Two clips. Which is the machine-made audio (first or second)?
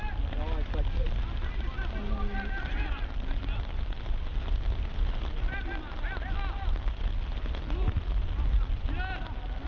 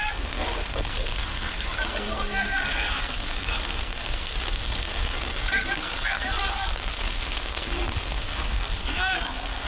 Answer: second